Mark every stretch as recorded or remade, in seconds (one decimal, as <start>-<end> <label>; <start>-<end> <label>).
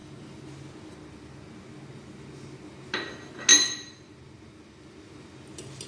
0.0-5.9 recorded